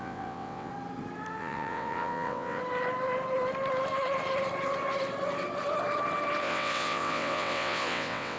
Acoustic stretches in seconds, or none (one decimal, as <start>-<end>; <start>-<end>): 0.7-1.4; 2.6-6.4

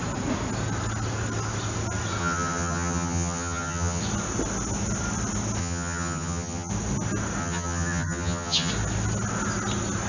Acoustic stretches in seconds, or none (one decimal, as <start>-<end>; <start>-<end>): 0.0-2.2; 4.0-5.6; 6.7-7.4; 8.7-10.1